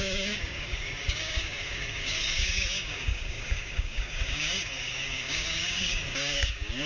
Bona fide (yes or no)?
no